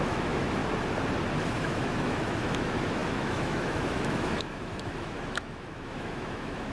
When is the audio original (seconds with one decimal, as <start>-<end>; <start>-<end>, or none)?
0.6-1.6